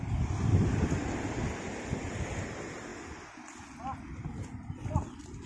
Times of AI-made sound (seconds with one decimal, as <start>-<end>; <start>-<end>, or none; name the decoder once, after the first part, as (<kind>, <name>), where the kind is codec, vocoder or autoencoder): none